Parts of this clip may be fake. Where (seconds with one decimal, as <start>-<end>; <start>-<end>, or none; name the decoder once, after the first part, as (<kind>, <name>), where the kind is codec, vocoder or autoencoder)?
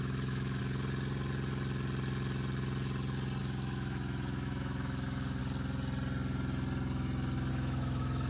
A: 0.0-0.6 (autoencoder, DAC-VAE); 3.4-5.4; 7.5-8.3